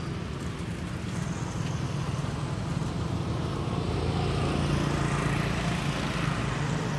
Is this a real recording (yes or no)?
yes